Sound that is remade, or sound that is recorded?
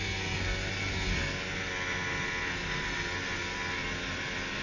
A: recorded